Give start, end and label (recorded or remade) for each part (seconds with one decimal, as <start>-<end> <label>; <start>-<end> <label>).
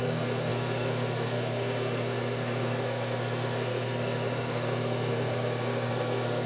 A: 0.0-6.5 remade